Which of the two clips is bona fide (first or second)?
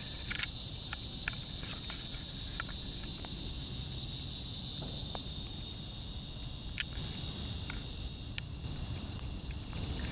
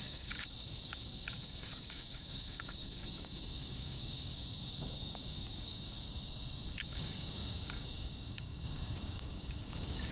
first